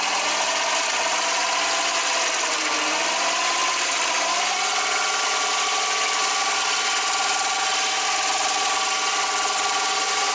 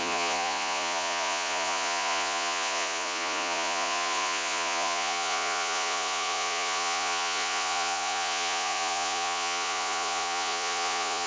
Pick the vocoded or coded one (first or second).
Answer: second